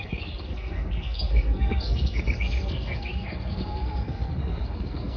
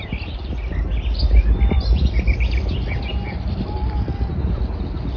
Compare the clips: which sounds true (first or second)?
second